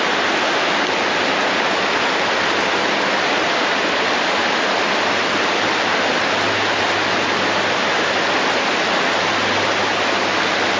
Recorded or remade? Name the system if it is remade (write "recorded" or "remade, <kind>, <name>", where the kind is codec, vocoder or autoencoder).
recorded